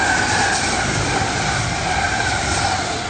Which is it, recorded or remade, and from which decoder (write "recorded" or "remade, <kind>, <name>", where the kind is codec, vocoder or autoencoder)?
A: recorded